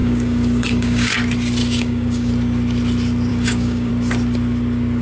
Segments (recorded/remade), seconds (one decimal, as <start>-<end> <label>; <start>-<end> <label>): 0.0-1.1 remade; 1.1-1.6 recorded; 1.6-2.3 remade; 2.3-3.3 recorded; 3.3-3.9 remade; 3.9-5.0 recorded